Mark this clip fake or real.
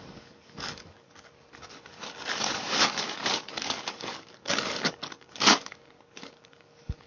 fake